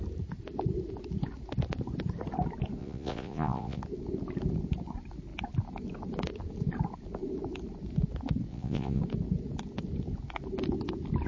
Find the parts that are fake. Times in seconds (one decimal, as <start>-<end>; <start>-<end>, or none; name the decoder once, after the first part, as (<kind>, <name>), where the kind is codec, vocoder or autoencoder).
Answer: 2.8-3.8 (vocoder, Vocos); 8.5-9.0